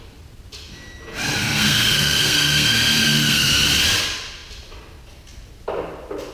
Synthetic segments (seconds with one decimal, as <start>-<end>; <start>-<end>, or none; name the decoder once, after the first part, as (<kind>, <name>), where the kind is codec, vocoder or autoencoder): 1.4-3.5 (codec, SNAC)